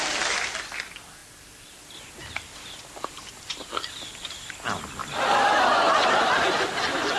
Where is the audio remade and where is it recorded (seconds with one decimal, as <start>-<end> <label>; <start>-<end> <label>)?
0.0-5.0 recorded; 5.0-5.6 remade; 5.6-7.2 recorded